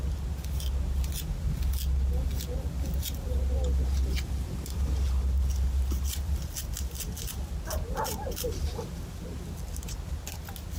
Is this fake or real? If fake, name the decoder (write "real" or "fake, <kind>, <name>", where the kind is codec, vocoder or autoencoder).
real